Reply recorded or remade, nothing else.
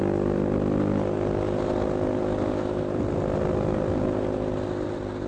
recorded